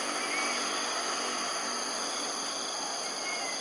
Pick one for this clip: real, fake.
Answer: real